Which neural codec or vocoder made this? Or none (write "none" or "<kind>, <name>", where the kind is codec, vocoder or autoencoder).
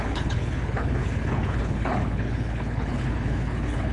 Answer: codec, HILCodec